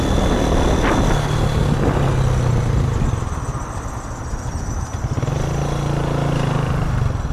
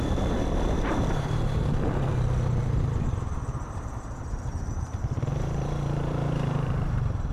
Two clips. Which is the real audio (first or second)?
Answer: first